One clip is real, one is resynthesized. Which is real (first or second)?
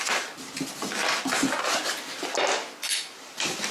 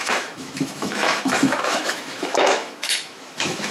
first